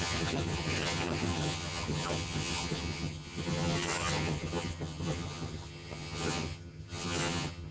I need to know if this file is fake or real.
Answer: fake